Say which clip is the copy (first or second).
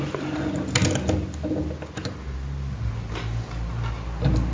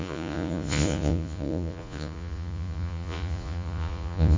second